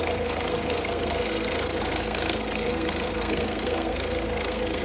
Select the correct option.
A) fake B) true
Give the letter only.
A